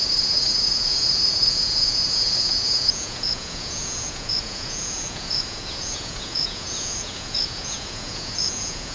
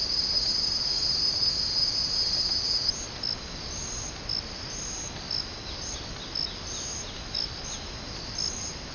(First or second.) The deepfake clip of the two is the first